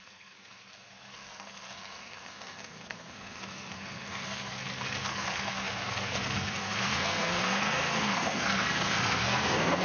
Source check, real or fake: fake